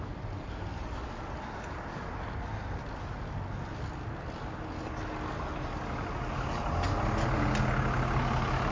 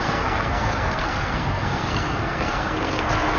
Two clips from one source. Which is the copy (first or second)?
second